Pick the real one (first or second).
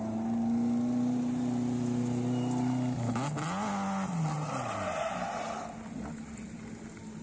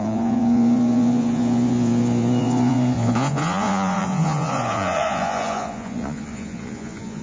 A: first